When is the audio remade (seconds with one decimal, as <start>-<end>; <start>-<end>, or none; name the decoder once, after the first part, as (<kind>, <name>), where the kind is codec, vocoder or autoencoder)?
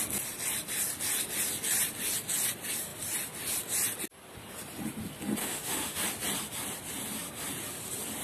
5.4-6.0 (autoencoder, DAC-VAE)